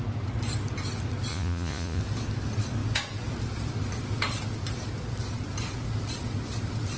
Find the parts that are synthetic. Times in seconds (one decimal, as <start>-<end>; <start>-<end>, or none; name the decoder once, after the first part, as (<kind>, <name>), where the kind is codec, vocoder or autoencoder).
1.3-2.0 (vocoder, Vocos)